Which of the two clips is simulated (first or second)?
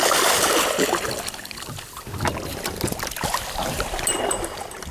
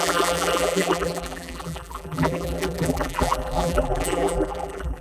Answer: second